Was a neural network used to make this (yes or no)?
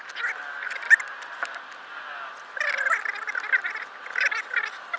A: no